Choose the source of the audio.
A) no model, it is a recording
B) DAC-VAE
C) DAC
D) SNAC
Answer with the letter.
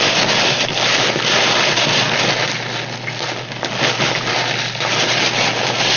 A